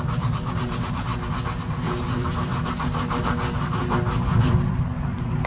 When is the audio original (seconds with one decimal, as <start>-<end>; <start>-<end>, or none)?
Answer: 1.1-2.0; 2.5-3.2; 3.8-4.7